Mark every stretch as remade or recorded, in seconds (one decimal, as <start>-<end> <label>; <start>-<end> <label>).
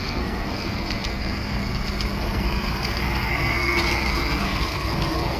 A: 0.0-5.4 remade